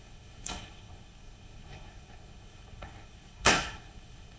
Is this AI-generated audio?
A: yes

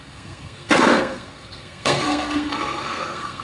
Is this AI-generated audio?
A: yes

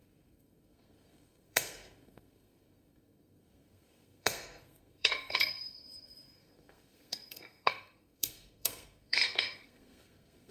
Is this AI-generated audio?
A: yes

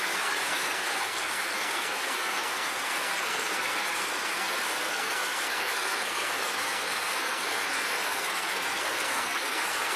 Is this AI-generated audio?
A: yes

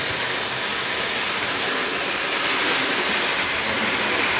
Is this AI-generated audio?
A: no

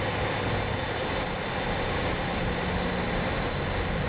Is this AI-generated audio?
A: no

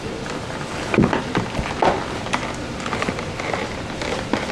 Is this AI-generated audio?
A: no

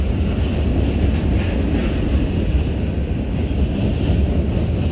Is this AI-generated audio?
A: no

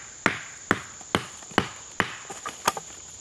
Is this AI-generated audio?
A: no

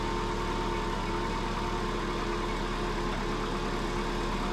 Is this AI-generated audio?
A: no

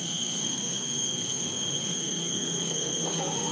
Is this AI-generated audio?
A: yes